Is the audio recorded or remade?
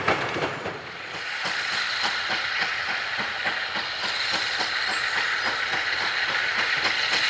recorded